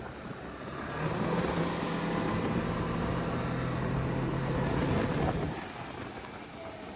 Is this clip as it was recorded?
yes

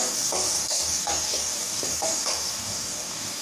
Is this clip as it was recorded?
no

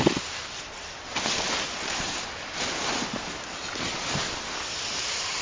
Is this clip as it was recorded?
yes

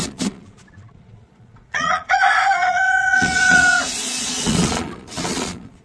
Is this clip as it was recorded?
no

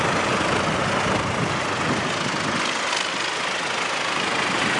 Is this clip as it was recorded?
yes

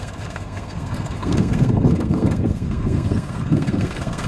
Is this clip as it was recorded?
no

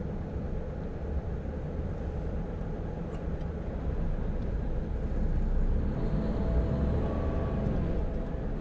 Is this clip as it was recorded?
yes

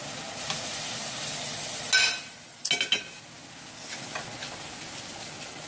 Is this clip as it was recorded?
yes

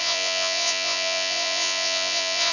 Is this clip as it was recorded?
no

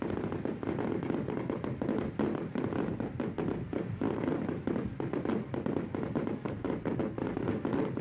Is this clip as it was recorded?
yes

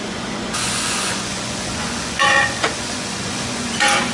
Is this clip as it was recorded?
no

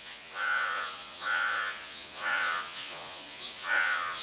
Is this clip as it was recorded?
no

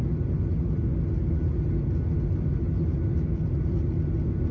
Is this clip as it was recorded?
yes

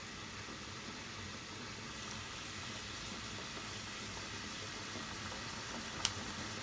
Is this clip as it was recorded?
no